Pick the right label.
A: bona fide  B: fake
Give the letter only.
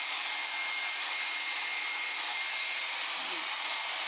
B